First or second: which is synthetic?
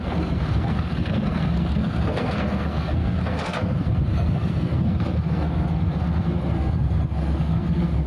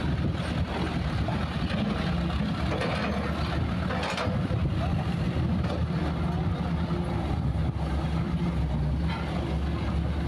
first